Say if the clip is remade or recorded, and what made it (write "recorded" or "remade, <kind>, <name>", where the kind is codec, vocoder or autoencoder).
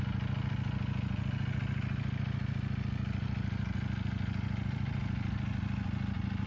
recorded